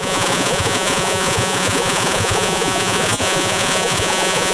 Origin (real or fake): fake